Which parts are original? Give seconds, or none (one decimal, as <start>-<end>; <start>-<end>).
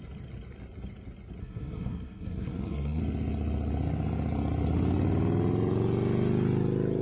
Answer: 0.0-1.4; 3.0-7.0